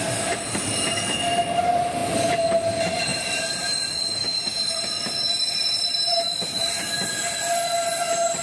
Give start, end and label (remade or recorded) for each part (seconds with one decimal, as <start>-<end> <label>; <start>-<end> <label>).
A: 0.0-3.1 recorded; 3.1-7.3 remade; 7.3-8.4 recorded